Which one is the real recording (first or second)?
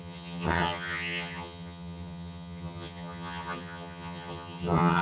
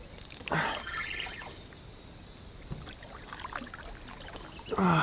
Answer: second